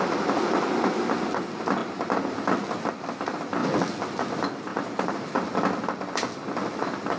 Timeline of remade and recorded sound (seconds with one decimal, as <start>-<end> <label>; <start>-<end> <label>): 0.0-4.7 recorded; 4.7-5.5 remade; 5.5-7.2 recorded